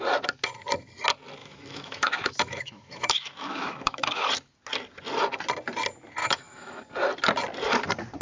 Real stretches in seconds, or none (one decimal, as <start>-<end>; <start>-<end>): 0.0-1.4; 4.3-6.2; 6.8-8.2

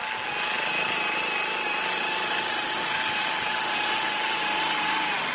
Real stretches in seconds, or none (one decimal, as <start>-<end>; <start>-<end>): 0.0-5.3

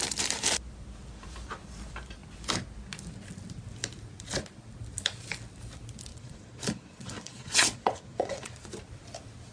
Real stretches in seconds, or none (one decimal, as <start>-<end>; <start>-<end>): 0.0-6.1; 8.7-9.5

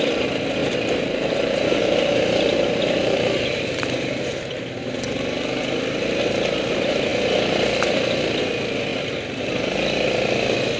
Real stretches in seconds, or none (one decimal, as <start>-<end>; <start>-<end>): 0.0-0.6; 4.9-10.8